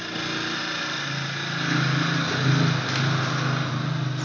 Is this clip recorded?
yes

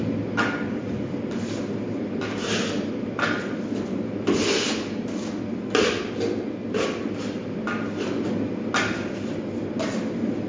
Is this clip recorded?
yes